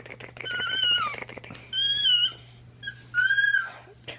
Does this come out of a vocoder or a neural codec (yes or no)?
no